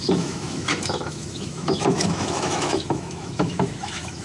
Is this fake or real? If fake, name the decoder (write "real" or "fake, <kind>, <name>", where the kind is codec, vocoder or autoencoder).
fake, autoencoder, DAC-VAE